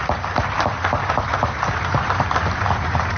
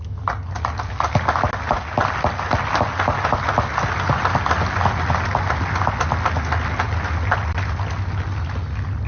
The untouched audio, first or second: second